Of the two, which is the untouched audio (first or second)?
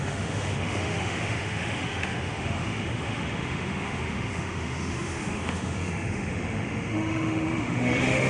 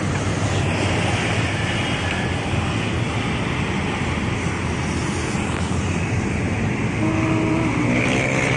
second